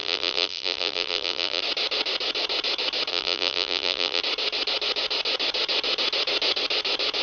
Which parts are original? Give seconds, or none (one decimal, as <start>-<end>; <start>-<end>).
1.6-3.1; 4.2-7.2